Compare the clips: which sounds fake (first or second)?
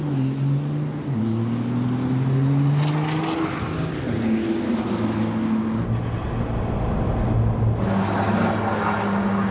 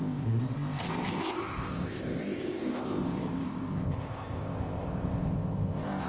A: second